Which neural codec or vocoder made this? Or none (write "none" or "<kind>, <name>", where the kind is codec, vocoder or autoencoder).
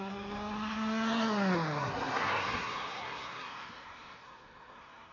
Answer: codec, SNAC